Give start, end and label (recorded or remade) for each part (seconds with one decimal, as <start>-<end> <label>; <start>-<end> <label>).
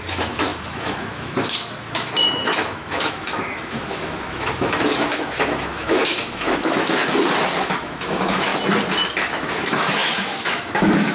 0.0-7.0 remade; 7.0-7.6 recorded; 7.6-8.5 remade; 8.5-9.3 recorded; 9.3-11.1 remade